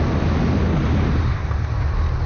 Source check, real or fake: real